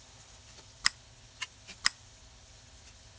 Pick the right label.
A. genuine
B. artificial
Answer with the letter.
A